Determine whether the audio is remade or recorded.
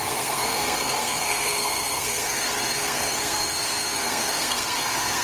remade